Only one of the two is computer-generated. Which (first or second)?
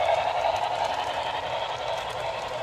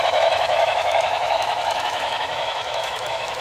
second